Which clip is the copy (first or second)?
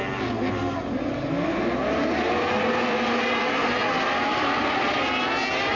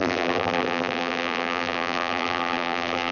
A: second